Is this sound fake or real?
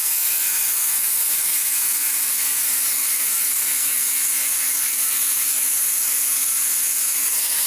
fake